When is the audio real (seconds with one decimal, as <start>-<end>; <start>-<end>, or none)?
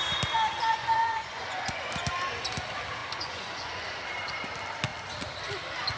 0.0-0.7; 1.9-3.0; 4.0-6.0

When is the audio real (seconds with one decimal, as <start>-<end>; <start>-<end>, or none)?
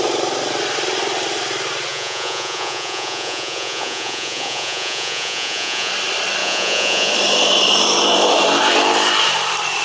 0.0-1.9; 5.9-6.4; 7.1-9.8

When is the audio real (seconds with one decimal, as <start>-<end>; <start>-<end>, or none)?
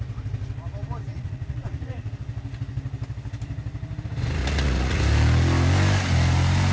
0.0-1.1; 2.1-4.4; 5.0-6.7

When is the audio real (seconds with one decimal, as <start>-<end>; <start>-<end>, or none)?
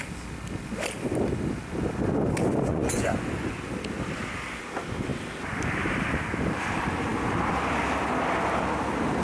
0.0-2.7; 3.5-9.2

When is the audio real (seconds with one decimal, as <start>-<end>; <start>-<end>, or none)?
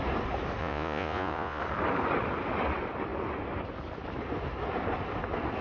0.0-0.6; 1.6-5.6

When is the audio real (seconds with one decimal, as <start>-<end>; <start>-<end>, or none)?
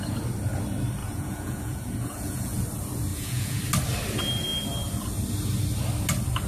0.0-1.0; 2.6-3.1; 3.6-6.5